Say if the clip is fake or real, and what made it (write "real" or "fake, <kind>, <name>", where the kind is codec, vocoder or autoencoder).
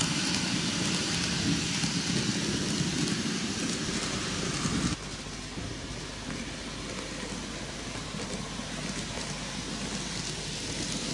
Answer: real